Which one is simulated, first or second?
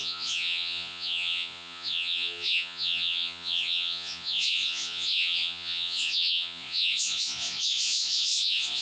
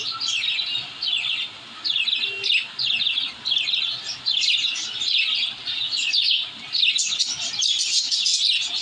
first